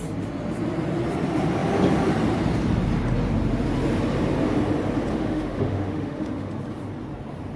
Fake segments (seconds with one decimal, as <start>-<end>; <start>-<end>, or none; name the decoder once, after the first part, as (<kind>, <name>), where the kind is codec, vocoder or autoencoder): 5.1-6.5 (autoencoder, DAC-VAE)